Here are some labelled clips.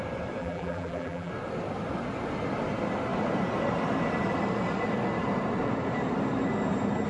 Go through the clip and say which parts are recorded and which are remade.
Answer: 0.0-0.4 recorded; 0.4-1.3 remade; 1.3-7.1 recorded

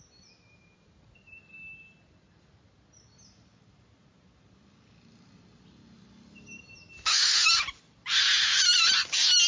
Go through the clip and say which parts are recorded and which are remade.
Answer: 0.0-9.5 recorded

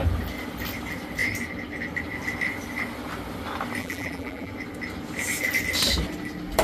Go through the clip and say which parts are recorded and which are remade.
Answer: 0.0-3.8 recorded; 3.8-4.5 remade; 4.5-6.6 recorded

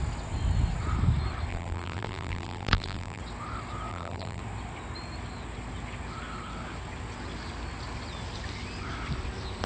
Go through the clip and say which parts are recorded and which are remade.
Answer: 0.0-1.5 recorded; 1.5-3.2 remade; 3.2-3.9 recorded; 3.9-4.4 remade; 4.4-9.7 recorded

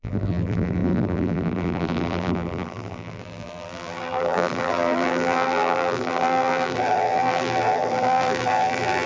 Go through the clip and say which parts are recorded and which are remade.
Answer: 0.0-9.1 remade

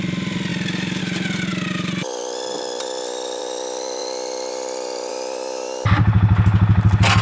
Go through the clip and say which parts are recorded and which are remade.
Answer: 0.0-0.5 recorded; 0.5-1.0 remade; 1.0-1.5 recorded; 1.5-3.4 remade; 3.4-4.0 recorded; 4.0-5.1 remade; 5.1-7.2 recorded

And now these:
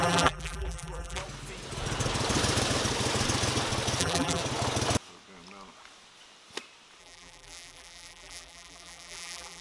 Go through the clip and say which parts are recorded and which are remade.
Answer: 0.0-1.2 remade; 1.2-4.0 recorded; 4.0-4.4 remade; 4.4-7.0 recorded; 7.0-9.6 remade

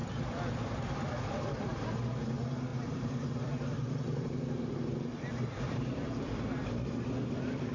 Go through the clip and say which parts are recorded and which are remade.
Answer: 0.0-1.0 recorded; 1.0-7.7 remade